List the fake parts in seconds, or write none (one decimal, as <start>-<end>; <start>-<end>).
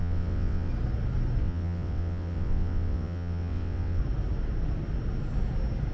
0.0-0.7; 1.4-4.0